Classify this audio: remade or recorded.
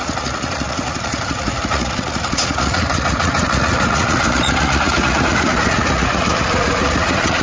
remade